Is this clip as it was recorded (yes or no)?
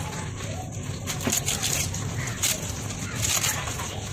no